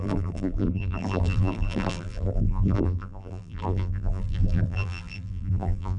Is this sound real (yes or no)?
no